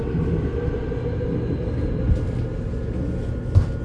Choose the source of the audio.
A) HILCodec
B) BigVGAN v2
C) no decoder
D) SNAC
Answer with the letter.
C